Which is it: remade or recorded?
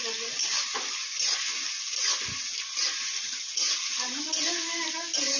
recorded